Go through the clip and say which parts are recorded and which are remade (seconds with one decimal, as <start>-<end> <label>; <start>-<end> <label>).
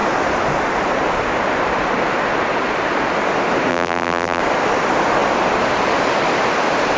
0.0-3.7 recorded; 3.7-4.4 remade; 4.4-7.0 recorded